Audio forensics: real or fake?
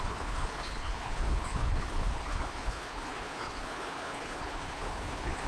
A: fake